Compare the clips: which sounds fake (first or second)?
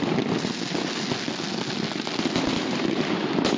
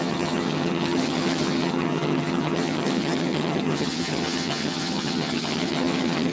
second